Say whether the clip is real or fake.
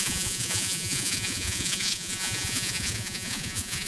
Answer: fake